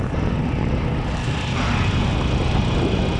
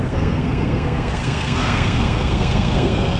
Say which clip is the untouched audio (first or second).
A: first